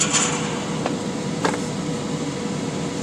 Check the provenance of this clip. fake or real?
fake